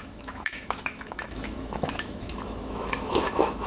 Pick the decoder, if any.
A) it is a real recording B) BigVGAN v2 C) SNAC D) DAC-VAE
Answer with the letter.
D